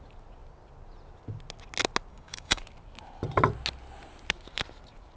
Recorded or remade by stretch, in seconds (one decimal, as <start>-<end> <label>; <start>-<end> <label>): 0.0-2.1 recorded; 2.1-2.6 remade; 2.6-5.2 recorded

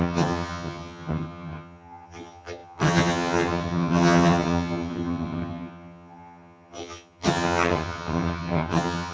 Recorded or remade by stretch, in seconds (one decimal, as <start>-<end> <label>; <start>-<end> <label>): 0.0-9.1 remade

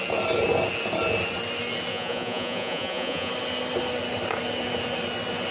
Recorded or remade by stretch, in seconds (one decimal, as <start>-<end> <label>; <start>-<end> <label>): 0.0-1.9 recorded; 1.9-3.3 remade; 3.3-5.5 recorded

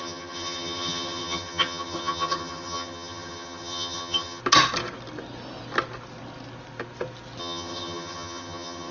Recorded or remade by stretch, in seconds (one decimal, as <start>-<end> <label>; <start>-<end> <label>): 0.0-4.4 remade; 4.4-7.4 recorded; 7.4-8.9 remade

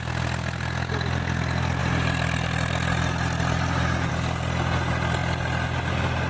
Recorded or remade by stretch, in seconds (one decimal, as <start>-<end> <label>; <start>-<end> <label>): 0.0-6.3 recorded